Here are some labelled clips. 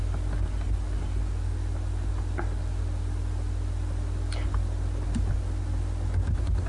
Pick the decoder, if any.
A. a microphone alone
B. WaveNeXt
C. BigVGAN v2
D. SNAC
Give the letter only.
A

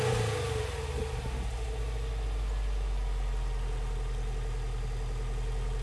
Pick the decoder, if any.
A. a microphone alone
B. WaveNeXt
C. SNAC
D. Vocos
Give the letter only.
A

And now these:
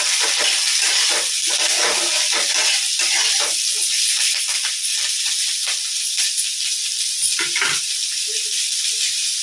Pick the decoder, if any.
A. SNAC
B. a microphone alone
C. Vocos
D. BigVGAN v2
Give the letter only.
D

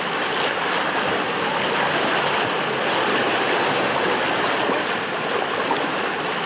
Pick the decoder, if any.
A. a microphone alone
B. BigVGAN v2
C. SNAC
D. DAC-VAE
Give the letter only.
A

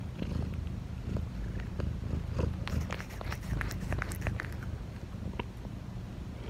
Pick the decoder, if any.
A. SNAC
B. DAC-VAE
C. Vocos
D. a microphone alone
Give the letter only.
D